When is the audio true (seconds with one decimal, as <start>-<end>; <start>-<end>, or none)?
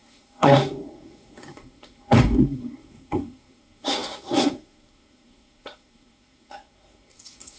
none